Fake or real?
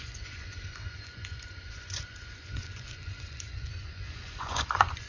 fake